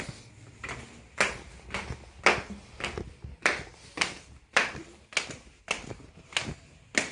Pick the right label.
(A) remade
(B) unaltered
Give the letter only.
B